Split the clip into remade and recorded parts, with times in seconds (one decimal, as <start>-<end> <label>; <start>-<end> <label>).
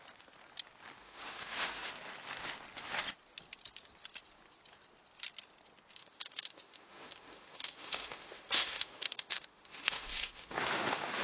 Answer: 0.0-1.0 recorded; 1.0-1.9 remade; 1.9-6.0 recorded; 6.0-11.2 remade